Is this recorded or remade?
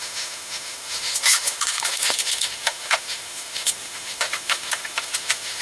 remade